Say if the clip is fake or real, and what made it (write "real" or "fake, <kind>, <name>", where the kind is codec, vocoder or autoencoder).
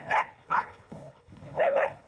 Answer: fake, codec, HILCodec